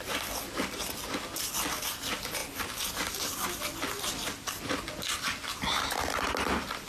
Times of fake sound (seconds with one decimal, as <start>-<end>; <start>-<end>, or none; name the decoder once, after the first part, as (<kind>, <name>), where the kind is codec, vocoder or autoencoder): none